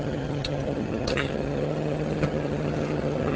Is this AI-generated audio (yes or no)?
yes